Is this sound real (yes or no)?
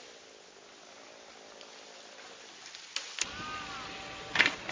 yes